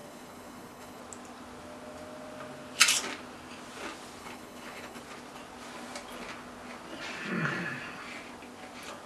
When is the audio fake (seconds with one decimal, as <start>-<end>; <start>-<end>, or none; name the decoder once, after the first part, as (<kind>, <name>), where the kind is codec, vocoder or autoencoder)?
0.0-1.0 (codec, HILCodec); 4.2-5.0

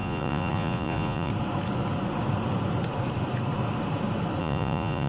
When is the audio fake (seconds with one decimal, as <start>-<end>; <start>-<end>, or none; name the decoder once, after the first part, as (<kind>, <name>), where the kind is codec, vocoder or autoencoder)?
0.0-1.3 (vocoder, Vocos); 4.4-5.1